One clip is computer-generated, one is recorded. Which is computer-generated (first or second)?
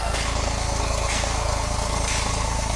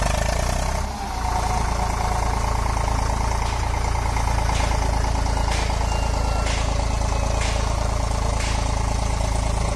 first